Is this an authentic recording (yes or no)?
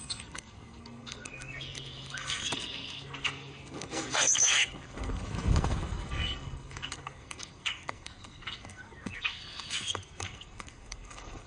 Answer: no